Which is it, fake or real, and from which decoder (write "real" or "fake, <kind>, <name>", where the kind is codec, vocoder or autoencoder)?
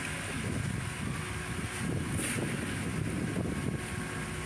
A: real